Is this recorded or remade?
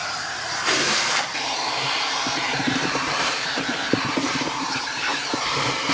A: remade